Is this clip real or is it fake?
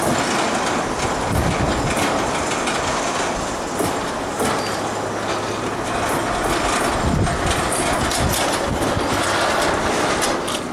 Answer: real